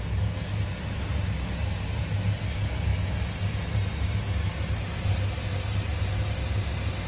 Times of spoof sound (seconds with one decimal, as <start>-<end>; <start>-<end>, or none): none